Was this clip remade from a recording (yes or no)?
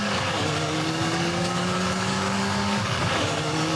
yes